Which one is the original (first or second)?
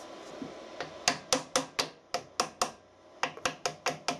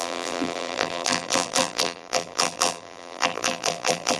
first